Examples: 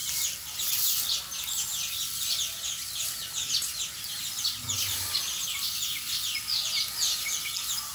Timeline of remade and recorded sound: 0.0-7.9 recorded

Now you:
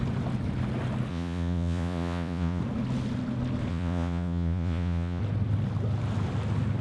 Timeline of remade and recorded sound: 0.0-1.1 recorded; 1.1-2.6 remade; 2.6-3.7 recorded; 3.7-5.2 remade; 5.2-6.8 recorded

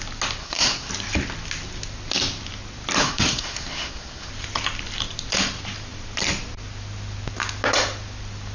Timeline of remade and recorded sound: 0.0-0.4 recorded; 0.4-0.9 remade; 0.9-3.0 recorded; 3.0-4.3 remade; 4.3-8.5 recorded

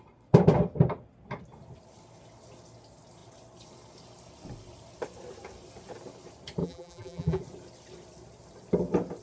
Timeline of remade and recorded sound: 0.0-6.6 recorded; 6.6-7.4 remade; 7.4-9.2 recorded

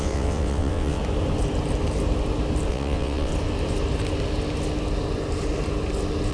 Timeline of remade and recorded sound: 0.0-1.0 remade; 1.0-2.7 recorded; 2.7-3.3 remade; 3.3-6.3 recorded

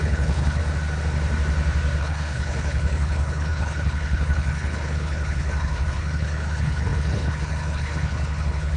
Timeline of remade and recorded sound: 0.0-0.6 remade; 0.6-2.0 recorded; 2.0-8.8 remade

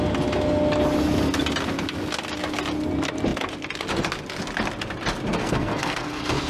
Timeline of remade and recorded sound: 0.0-5.4 recorded; 5.4-6.5 remade